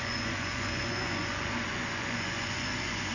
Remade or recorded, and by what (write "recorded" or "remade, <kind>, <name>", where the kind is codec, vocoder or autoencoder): remade, vocoder, Vocos